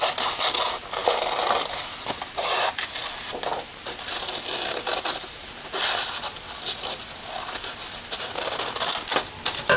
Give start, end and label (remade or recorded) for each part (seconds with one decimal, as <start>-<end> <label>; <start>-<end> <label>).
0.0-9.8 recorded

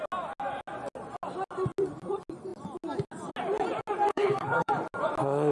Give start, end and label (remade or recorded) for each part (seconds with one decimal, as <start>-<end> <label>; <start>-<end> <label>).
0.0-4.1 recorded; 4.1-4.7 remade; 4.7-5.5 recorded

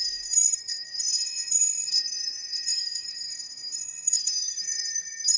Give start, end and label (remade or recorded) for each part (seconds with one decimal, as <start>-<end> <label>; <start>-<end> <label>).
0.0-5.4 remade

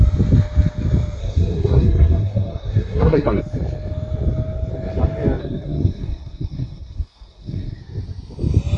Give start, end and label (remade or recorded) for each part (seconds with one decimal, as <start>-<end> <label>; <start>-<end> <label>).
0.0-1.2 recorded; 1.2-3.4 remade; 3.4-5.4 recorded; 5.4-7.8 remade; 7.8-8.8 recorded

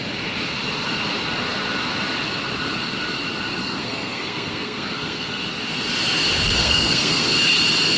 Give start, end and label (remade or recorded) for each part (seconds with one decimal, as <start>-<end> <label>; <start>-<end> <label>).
0.0-3.6 recorded; 3.6-5.4 remade; 5.4-6.6 recorded; 6.6-7.3 remade; 7.3-8.0 recorded

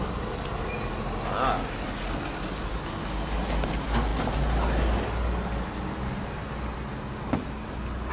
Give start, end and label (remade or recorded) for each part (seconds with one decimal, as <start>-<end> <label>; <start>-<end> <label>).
0.0-8.1 recorded

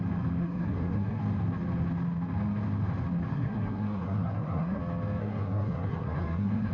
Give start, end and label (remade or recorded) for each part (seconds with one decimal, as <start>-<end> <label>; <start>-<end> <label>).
0.0-0.4 recorded; 0.4-1.2 remade; 1.2-3.3 recorded; 3.3-4.8 remade; 4.8-5.2 recorded; 5.2-6.7 remade

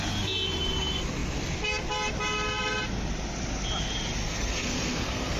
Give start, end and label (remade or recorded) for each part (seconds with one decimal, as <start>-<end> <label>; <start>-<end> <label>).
0.0-4.2 recorded; 4.2-5.4 remade